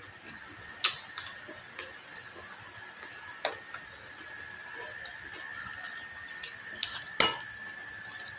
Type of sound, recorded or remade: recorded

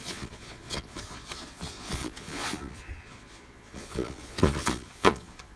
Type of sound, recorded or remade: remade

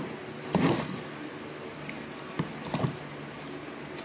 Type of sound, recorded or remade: recorded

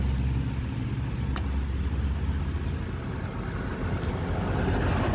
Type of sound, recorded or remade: recorded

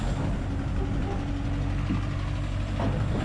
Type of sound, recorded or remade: recorded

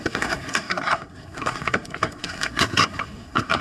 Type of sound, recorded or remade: remade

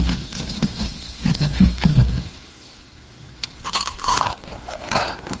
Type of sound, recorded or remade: remade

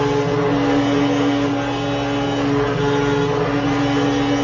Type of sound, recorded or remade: recorded